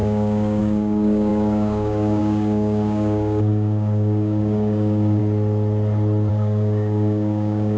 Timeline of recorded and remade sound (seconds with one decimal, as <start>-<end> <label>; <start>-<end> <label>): 0.0-5.2 remade; 5.2-6.3 recorded; 6.3-7.8 remade